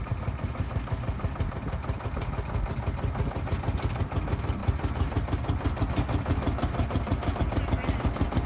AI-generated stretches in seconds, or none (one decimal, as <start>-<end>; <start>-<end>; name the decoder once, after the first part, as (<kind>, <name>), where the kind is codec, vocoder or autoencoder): none